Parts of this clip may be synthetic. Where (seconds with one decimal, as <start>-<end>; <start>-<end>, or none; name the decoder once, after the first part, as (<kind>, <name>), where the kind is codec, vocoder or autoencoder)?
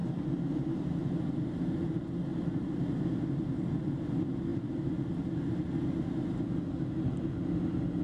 none